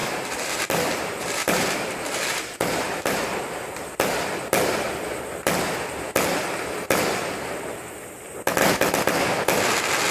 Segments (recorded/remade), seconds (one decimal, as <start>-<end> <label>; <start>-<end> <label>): 0.0-3.2 remade; 3.2-10.1 recorded